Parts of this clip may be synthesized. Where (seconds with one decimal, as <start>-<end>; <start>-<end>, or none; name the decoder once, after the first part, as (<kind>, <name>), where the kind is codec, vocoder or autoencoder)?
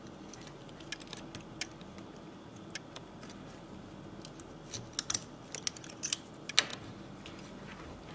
none